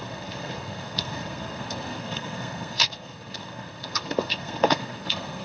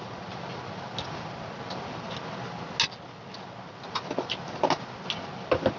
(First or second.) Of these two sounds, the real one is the second